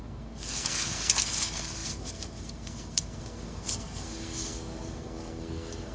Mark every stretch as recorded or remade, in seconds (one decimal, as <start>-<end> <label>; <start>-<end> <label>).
0.0-5.9 remade